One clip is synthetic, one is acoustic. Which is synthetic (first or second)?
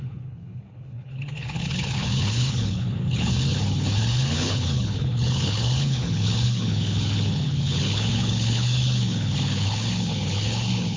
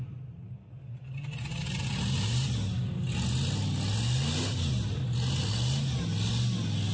first